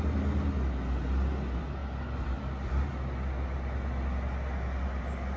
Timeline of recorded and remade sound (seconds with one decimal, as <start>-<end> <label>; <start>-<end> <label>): 0.0-5.4 recorded